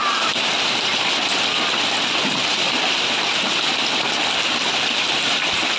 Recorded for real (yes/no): no